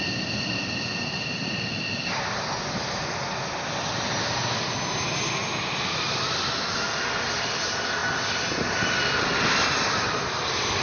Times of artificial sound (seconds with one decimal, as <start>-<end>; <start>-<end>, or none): none